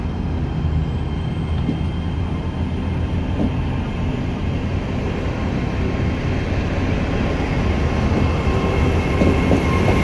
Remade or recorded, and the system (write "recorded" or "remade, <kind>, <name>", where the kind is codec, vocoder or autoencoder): recorded